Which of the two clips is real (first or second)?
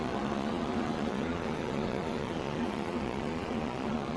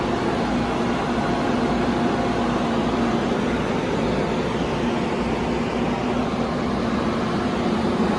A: second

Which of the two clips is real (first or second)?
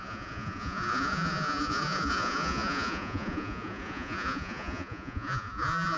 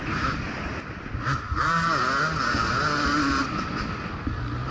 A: second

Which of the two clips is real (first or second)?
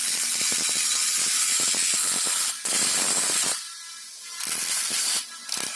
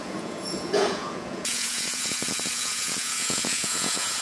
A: first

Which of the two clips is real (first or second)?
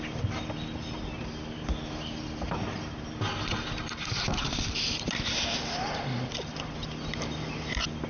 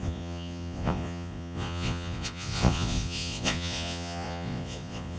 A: first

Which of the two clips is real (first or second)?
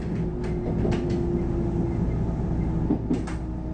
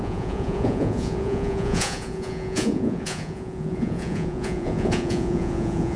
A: first